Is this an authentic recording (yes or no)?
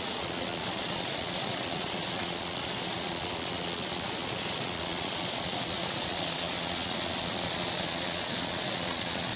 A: no